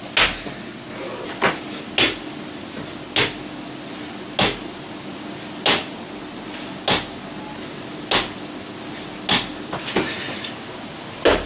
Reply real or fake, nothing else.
real